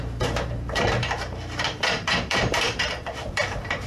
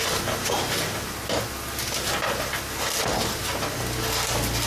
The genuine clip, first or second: second